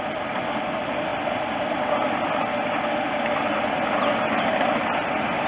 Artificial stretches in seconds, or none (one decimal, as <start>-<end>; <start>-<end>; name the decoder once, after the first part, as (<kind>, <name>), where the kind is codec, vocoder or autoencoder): none